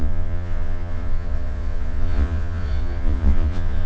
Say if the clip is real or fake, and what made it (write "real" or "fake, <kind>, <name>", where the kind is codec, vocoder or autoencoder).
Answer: fake, vocoder, Vocos